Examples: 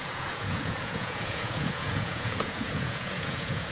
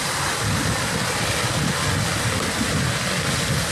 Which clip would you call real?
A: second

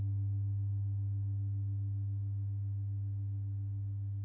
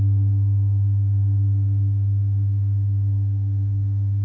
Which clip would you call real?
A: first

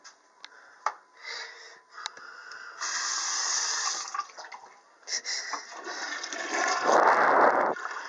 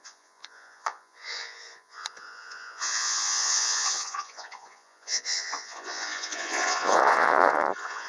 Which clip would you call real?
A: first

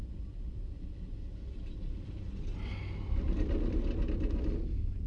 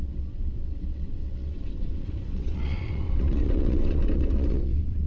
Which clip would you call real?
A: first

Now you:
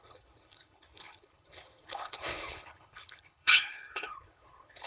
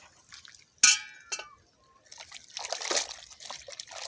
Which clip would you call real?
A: second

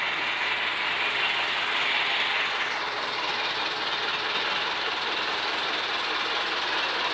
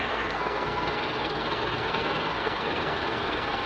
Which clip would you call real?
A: first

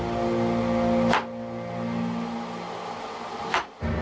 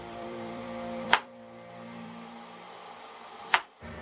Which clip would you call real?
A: first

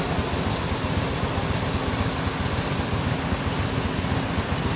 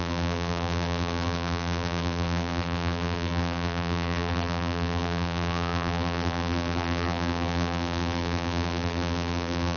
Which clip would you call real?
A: first